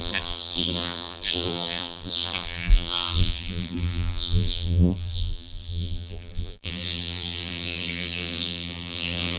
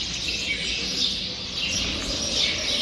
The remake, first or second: first